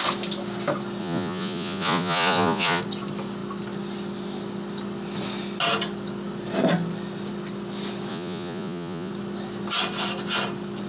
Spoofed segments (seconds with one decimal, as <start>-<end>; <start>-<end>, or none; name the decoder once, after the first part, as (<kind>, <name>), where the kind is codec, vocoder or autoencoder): 1.0-2.8 (vocoder, Vocos); 8.1-9.1